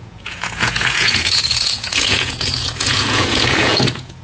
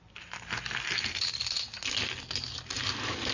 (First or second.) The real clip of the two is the second